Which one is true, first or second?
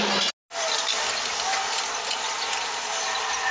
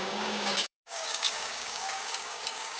first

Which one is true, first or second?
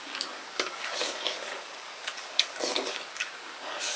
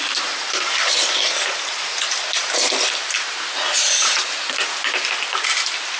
second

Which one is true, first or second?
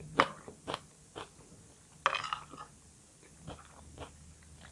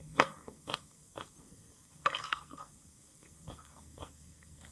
first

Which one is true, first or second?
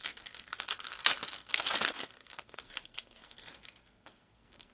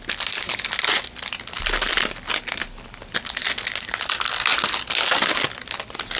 second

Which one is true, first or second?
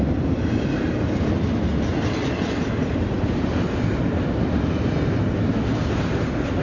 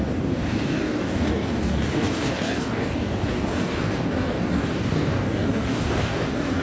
first